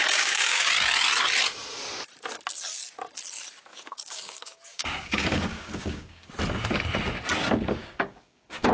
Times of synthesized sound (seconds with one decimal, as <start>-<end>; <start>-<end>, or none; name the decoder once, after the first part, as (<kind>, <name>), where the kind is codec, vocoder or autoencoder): 0.0-0.7 (codec, DAC); 3.7-6.3; 7.8-8.7